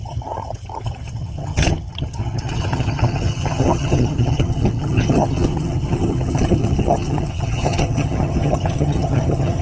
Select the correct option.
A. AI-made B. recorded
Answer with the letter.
A